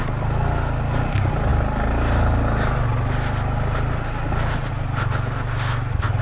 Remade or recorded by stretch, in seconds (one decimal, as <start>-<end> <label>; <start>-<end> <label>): 0.0-6.2 recorded